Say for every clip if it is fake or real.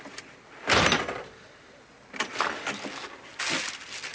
real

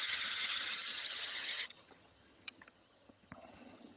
fake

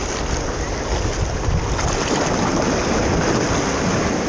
real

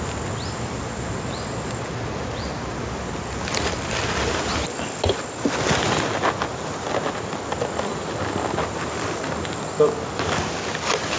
real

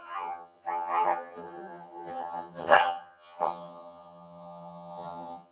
fake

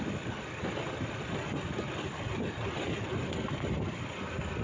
real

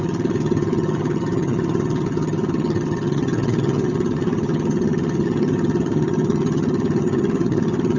fake